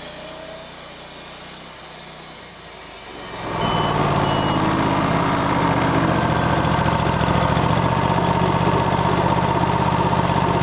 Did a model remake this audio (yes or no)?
no